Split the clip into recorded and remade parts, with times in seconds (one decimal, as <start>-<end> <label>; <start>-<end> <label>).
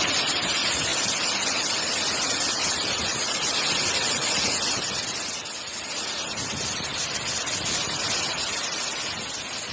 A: 0.0-9.7 recorded